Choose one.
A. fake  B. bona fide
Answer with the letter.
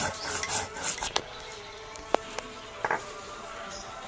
B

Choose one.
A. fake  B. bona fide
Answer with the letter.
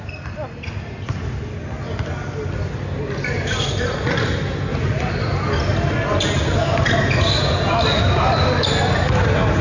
B